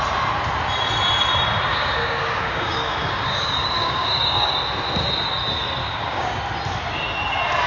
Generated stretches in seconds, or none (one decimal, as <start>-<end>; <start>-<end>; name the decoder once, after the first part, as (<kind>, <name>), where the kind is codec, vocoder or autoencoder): 1.7-4.5 (codec, DAC); 5.8-6.4

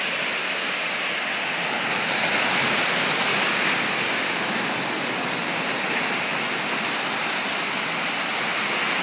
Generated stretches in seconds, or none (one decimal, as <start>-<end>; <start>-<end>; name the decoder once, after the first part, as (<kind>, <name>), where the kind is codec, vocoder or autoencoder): 0.4-1.0 (codec, DAC); 3.3-4.5

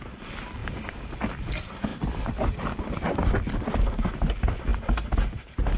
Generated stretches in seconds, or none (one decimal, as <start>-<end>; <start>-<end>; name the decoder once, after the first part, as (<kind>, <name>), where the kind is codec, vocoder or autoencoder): 0.6-1.1 (codec, DAC)

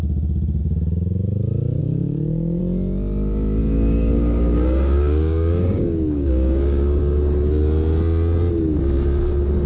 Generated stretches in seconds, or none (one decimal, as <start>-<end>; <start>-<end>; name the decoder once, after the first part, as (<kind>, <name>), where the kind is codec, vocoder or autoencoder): 1.8-2.6 (codec, DAC); 3.6-7.0

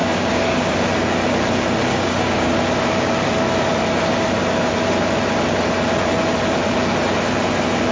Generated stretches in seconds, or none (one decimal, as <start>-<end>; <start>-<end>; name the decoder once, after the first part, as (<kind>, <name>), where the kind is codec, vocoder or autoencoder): 0.0-0.7 (codec, DAC); 1.9-2.5

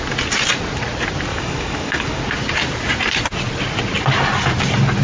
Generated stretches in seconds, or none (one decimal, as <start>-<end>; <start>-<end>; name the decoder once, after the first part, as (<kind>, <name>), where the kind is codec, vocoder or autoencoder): 1.3-2.2 (codec, DAC)

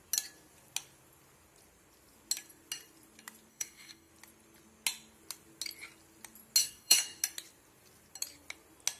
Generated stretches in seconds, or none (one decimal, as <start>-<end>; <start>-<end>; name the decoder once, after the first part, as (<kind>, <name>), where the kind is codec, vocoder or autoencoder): 3.5-4.1 (codec, DAC); 6.6-7.2

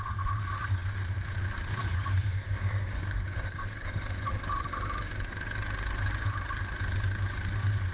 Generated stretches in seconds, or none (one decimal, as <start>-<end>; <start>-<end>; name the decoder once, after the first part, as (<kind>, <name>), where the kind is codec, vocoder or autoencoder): 1.8-4.6 (codec, DAC)